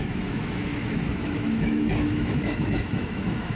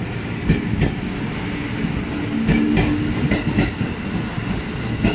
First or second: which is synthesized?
first